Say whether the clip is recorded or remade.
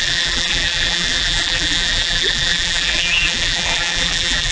remade